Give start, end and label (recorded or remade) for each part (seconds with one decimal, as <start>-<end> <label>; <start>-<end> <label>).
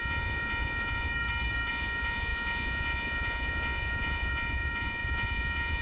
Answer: 0.0-1.1 remade; 1.1-1.7 recorded; 1.7-5.8 remade